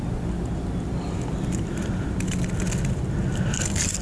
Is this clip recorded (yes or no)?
yes